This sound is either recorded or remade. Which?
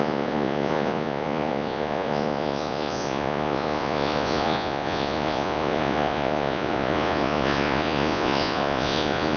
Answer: remade